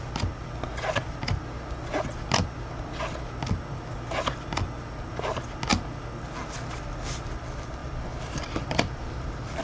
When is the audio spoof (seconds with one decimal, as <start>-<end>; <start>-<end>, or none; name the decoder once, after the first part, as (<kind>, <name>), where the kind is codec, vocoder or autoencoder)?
7.8-9.6 (vocoder, BigVGAN v2)